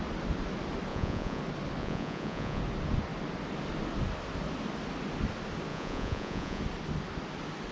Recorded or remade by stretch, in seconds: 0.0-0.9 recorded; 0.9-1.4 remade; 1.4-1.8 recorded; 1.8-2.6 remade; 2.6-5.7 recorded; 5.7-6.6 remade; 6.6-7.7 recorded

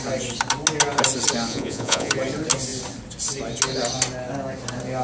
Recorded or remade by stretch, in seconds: 0.0-1.5 recorded; 1.5-2.1 remade; 2.1-5.0 recorded

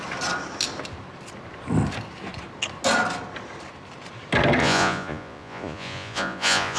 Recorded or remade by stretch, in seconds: 0.0-4.6 recorded; 4.6-6.8 remade

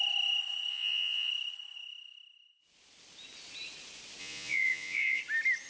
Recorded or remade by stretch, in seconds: 0.0-0.7 recorded; 0.7-1.3 remade; 1.3-4.2 recorded; 4.2-5.2 remade; 5.2-5.7 recorded